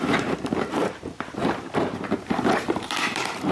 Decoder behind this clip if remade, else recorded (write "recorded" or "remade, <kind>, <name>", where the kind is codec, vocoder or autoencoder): remade, vocoder, BigVGAN v2